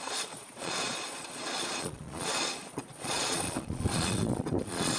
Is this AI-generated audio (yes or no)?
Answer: yes